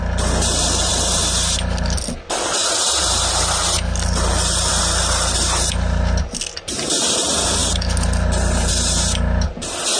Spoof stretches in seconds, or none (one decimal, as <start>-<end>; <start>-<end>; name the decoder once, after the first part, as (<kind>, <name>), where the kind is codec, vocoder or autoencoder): none